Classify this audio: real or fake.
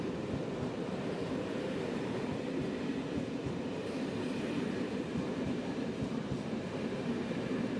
fake